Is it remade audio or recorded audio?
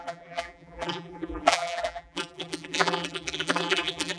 remade